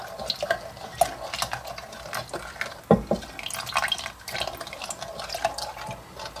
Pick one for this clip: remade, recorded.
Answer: recorded